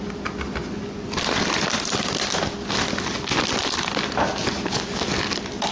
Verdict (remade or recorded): recorded